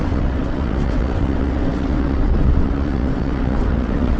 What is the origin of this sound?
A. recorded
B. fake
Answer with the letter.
B